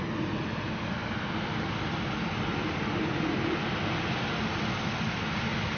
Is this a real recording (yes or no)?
yes